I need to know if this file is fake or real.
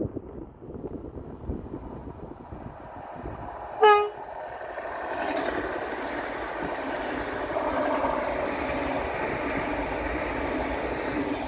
real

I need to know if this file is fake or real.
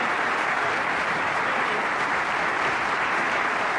fake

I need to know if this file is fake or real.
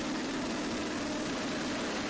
real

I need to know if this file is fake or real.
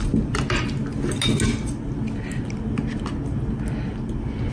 real